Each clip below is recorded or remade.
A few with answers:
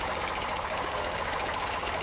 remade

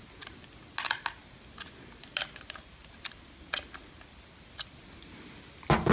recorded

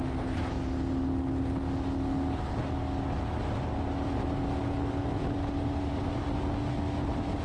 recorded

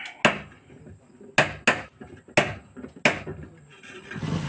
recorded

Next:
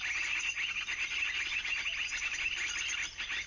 recorded